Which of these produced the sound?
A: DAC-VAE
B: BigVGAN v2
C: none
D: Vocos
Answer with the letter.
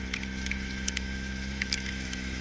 A